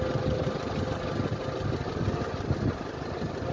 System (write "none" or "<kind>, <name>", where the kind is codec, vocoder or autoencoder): none